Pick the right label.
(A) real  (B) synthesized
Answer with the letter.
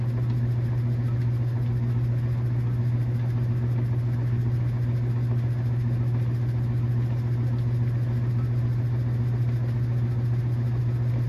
A